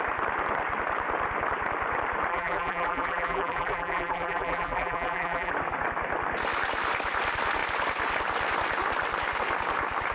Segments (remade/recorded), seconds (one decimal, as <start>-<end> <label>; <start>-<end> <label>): 0.0-2.3 recorded; 2.3-5.5 remade; 5.5-10.1 recorded